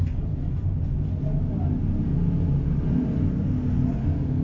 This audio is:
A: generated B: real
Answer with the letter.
B